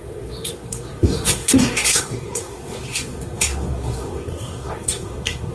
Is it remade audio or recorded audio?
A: remade